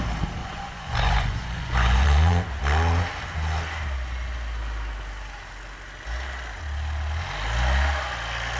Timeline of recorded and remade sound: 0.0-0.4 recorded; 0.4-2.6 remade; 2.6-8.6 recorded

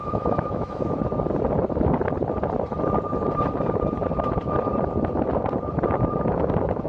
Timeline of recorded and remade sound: 0.0-0.9 remade; 0.9-6.9 recorded

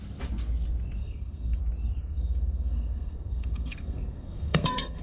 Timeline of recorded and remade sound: 0.0-1.0 recorded; 1.0-1.6 remade; 1.6-2.0 recorded; 2.0-5.0 remade

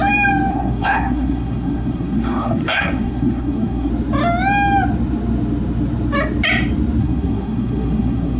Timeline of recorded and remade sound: 0.0-0.5 recorded; 0.5-3.9 remade; 3.9-7.0 recorded; 7.0-8.4 remade

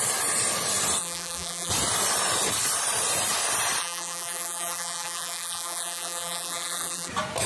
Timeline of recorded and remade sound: 0.0-1.0 recorded; 1.0-1.7 remade; 1.7-3.8 recorded; 3.8-7.1 remade; 7.1-7.5 recorded

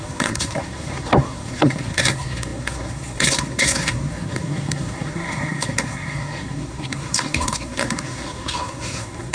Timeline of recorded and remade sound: 0.0-9.3 remade

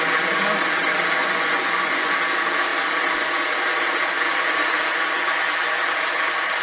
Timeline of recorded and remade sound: 0.0-1.2 recorded; 1.2-2.1 remade; 2.1-6.6 recorded